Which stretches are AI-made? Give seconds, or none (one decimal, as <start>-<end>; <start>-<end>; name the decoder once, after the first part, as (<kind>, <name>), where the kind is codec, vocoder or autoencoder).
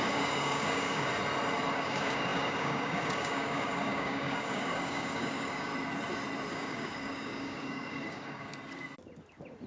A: 0.0-1.1 (codec, DAC); 1.7-5.7; 6.5-8.5